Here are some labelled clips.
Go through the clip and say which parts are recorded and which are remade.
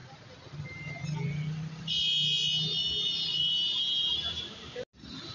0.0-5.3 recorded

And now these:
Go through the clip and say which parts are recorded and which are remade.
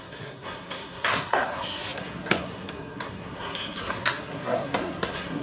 0.0-5.4 remade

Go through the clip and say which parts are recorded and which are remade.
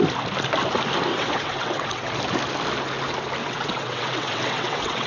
0.0-1.1 recorded; 1.1-2.1 remade; 2.1-3.4 recorded; 3.4-5.1 remade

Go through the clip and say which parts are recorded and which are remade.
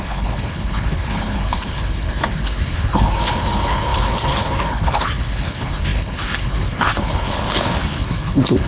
0.0-8.7 remade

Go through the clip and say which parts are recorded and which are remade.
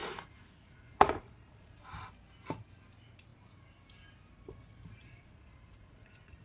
0.0-1.8 remade; 1.8-5.0 recorded; 5.0-6.4 remade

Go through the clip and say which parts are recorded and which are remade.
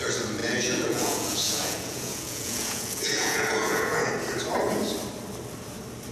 0.0-0.4 recorded; 0.4-4.1 remade; 4.1-6.1 recorded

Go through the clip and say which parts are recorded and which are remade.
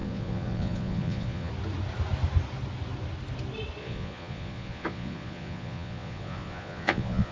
0.0-1.5 remade; 1.5-3.8 recorded; 3.8-7.3 remade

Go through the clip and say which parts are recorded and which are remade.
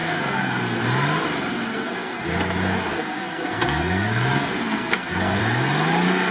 0.0-0.8 remade; 0.8-1.7 recorded; 1.7-2.2 remade; 2.2-2.9 recorded; 2.9-5.4 remade; 5.4-6.3 recorded